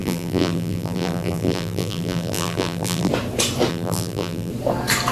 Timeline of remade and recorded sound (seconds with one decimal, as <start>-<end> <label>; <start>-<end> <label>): 0.0-3.1 remade; 3.1-3.7 recorded; 3.7-4.5 remade; 4.5-5.1 recorded